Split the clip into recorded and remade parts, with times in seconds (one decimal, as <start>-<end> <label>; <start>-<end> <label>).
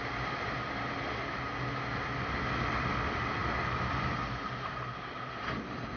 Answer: 0.0-6.0 recorded